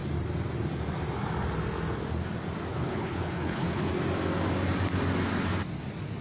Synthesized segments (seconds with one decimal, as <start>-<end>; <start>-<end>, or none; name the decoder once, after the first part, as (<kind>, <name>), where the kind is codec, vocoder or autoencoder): 2.7-3.9 (codec, HILCodec)